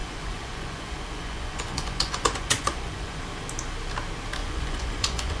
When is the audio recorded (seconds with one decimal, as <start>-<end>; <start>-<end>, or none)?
3.2-4.4